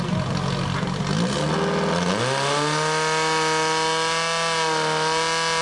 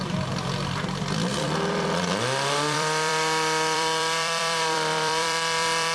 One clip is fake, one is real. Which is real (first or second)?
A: first